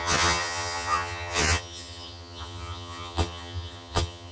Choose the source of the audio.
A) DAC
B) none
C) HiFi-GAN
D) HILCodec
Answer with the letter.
C